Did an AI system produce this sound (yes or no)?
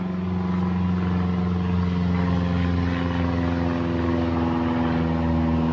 no